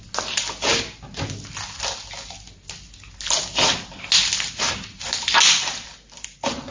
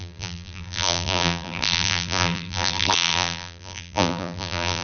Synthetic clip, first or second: second